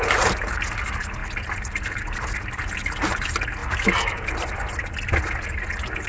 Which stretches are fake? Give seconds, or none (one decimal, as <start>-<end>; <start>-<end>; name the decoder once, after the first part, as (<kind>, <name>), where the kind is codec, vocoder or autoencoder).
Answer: none